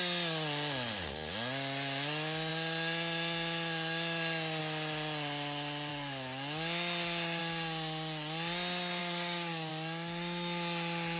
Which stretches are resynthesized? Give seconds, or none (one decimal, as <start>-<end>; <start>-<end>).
9.0-9.7